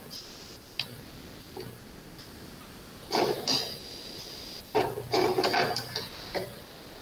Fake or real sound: real